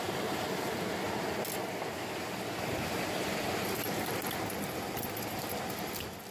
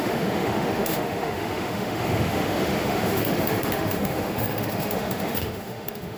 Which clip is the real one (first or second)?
first